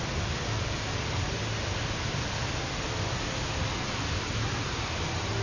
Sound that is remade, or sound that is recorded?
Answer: recorded